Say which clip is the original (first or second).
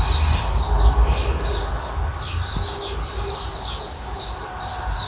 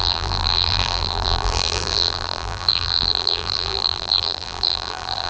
first